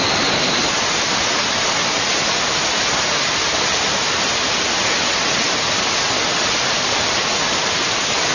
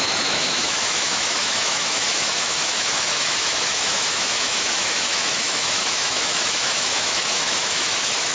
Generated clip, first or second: second